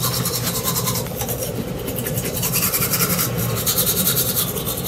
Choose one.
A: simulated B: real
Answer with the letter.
B